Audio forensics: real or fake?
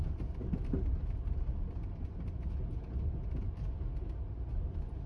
real